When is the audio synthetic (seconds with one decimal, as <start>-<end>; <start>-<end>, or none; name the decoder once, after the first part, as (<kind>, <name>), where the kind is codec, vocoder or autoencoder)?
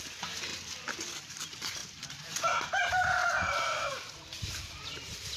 0.0-0.5 (vocoder, BigVGAN v2); 1.2-3.2; 3.9-5.4